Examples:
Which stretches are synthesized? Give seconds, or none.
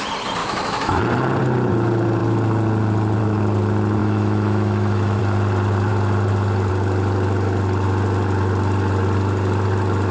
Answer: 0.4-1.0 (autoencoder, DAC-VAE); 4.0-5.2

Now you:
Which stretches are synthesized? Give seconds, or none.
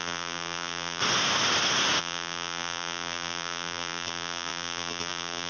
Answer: 0.0-1.0 (vocoder, BigVGAN v2); 2.0-5.5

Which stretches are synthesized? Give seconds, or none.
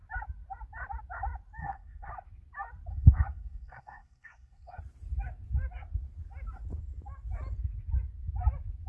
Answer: 1.6-2.1 (codec, SNAC); 2.9-4.8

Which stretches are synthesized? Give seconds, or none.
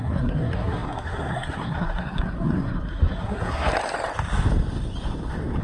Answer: 0.0-3.7 (codec, SNAC)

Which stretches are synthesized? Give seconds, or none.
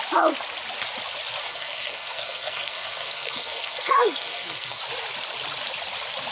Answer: 1.4-4.8 (codec, SNAC)